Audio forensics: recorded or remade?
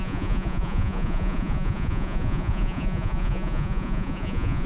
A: remade